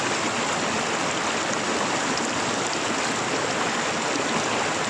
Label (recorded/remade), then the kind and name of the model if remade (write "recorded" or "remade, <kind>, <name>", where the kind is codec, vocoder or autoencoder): recorded